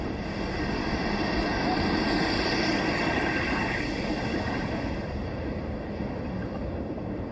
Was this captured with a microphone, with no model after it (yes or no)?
no